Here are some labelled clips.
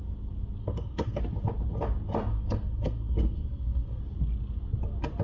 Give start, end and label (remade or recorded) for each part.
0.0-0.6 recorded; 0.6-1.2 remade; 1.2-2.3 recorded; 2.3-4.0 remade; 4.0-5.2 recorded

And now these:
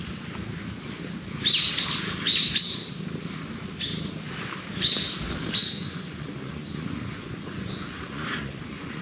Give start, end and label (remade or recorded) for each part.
0.0-5.6 recorded; 5.6-9.0 remade

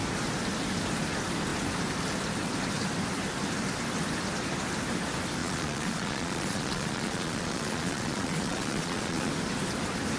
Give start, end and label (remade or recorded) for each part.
0.0-5.4 recorded; 5.4-9.3 remade; 9.3-10.2 recorded

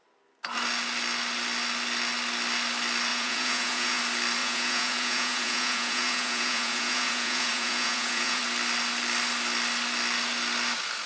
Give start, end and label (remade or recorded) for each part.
0.0-3.1 recorded; 3.1-4.0 remade; 4.0-4.4 recorded; 4.4-8.4 remade; 8.4-11.1 recorded

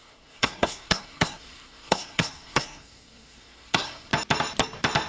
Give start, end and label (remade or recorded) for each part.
0.0-4.1 remade; 4.1-5.1 recorded

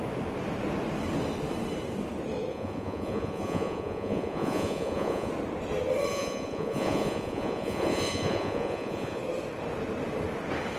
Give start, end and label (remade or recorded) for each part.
0.0-2.5 recorded; 2.5-5.3 remade; 5.3-6.1 recorded; 6.1-9.2 remade; 9.2-10.8 recorded

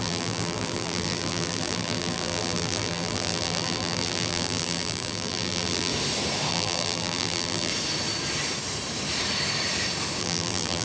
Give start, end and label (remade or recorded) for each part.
0.0-5.9 remade; 5.9-6.5 recorded; 6.5-7.7 remade; 7.7-10.2 recorded; 10.2-10.8 remade